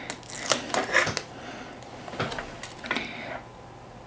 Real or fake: real